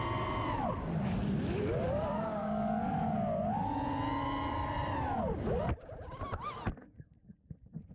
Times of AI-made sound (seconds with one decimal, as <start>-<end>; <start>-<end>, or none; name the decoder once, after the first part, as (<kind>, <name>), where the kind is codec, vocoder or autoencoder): 2.3-2.9 (codec, DAC)